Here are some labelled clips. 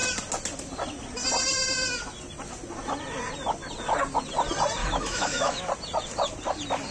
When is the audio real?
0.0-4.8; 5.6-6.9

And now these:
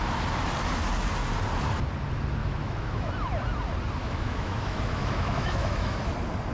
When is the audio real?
0.0-2.4; 3.1-4.0; 6.0-6.5

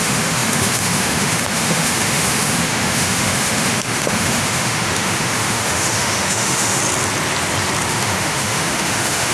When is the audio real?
6.8-7.9

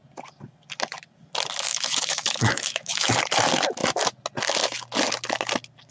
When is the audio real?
0.0-1.7; 3.1-5.9

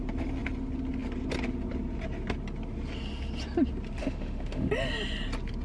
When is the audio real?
0.0-4.0; 4.7-5.6

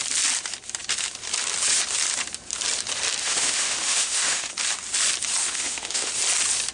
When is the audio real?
0.0-3.2; 4.5-5.4; 6.1-6.7